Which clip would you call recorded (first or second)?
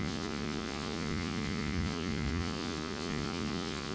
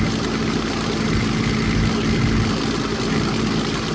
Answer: second